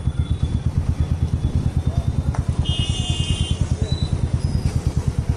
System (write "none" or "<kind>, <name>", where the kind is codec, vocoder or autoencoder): none